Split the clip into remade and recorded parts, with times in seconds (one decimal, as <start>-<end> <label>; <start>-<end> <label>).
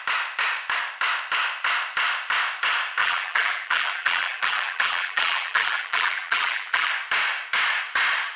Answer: 0.0-3.0 recorded; 3.0-6.9 remade; 6.9-8.4 recorded